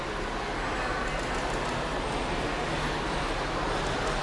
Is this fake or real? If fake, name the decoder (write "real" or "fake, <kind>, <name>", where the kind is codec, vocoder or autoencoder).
real